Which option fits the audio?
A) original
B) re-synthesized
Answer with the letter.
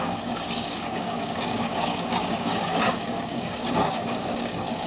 B